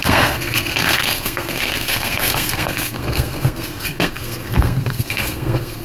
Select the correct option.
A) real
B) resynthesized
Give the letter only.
B